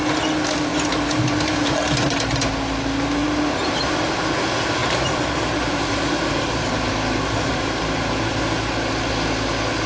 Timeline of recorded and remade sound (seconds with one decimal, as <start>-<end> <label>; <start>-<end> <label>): 0.0-0.7 recorded; 0.7-2.5 remade; 2.5-3.2 recorded; 3.2-4.3 remade; 4.3-4.8 recorded; 4.8-8.3 remade; 8.3-9.9 recorded